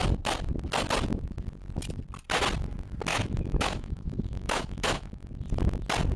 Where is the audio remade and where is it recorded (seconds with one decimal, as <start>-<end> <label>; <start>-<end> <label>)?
0.0-3.1 recorded; 3.1-5.3 remade; 5.3-6.2 recorded